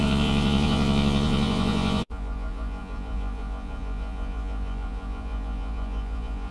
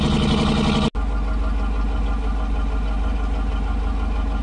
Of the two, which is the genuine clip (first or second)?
second